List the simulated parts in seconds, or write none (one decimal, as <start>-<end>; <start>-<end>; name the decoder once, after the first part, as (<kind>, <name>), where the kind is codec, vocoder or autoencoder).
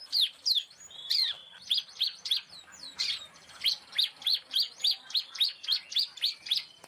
0.0-6.9 (vocoder, BigVGAN v2)